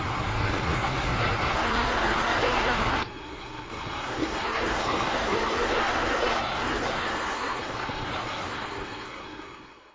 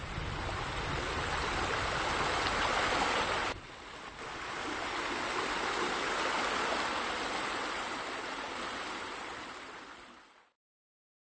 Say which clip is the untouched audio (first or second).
second